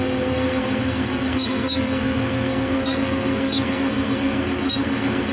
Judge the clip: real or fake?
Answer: fake